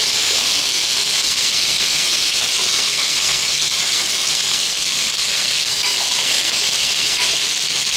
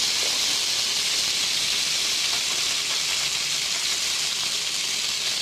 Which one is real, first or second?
second